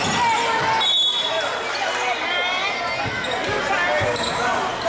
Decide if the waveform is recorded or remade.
recorded